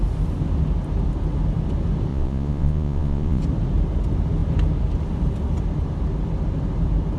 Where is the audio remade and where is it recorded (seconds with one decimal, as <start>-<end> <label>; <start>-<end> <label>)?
0.0-2.1 recorded; 2.1-3.4 remade; 3.4-7.2 recorded